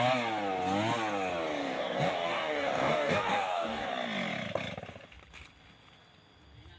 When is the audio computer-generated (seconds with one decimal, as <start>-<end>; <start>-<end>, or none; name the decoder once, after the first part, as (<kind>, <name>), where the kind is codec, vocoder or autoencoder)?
1.6-3.9 (codec, DAC)